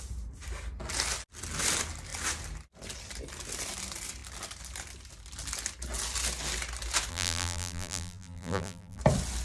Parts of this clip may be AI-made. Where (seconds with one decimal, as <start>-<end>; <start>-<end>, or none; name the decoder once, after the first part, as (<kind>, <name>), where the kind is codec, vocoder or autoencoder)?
7.1-9.0 (vocoder, BigVGAN v2)